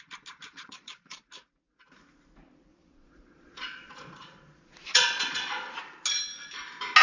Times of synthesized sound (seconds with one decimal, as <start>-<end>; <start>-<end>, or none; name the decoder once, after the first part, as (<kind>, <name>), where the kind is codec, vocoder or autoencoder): 0.5-1.2 (vocoder, Vocos); 2.7-5.8